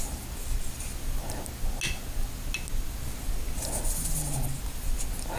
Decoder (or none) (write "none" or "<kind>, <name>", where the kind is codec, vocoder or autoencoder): none